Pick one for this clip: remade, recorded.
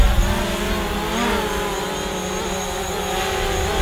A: recorded